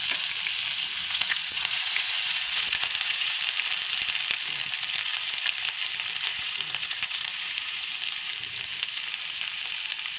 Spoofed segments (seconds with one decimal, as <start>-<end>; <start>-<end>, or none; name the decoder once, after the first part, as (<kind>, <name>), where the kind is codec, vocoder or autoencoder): 1.0-3.4 (vocoder, Vocos); 6.3-7.9